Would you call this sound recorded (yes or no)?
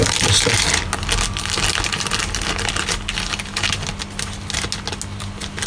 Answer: yes